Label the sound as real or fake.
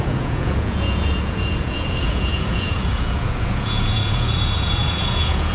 fake